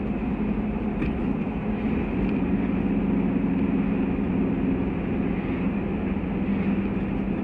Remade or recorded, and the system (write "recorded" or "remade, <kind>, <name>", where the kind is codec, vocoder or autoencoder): recorded